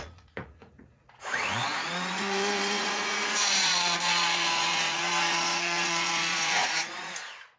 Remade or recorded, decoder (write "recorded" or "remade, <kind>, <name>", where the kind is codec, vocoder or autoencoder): remade, vocoder, Vocos